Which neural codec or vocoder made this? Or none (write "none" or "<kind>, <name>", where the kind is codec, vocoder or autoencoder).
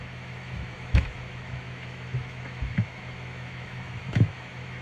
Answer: autoencoder, DAC-VAE